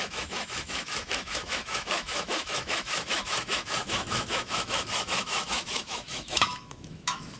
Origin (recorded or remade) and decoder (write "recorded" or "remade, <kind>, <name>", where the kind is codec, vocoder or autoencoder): remade, autoencoder, DAC-VAE